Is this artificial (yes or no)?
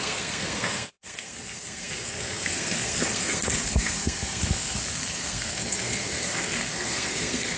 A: yes